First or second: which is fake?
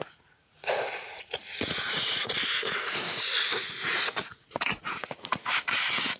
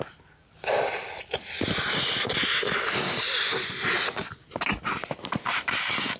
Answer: first